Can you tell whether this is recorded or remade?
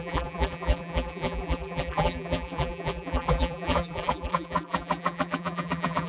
remade